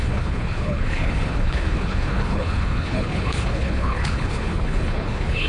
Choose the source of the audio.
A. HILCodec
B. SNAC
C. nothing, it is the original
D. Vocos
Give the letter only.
A